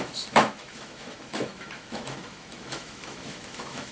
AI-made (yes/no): yes